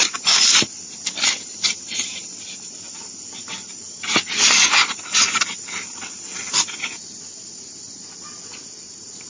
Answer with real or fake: real